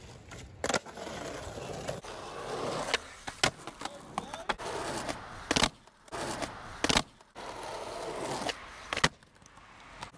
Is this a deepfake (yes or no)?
no